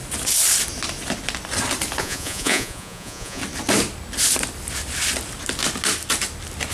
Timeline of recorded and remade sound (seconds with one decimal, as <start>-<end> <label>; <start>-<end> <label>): 0.0-2.0 recorded; 2.0-3.4 remade; 3.4-6.7 recorded